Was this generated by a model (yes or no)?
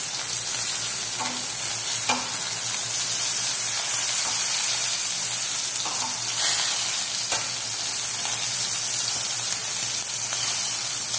no